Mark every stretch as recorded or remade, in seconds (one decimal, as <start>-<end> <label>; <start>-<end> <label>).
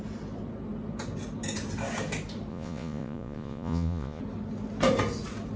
0.0-2.5 recorded; 2.5-4.2 remade; 4.2-5.6 recorded